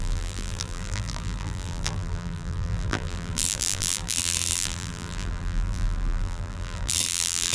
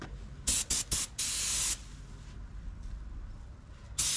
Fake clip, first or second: first